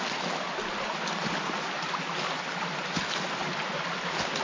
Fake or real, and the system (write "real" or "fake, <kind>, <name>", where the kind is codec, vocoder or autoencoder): real